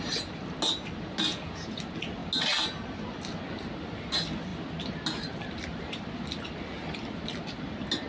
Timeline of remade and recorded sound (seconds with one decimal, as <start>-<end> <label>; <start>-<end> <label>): 0.0-1.3 recorded; 1.3-1.8 remade; 1.8-8.1 recorded